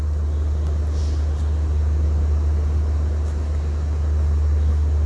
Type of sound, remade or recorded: recorded